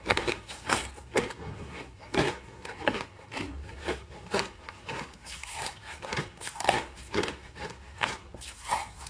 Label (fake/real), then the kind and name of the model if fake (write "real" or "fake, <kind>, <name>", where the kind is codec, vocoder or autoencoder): fake, codec, SNAC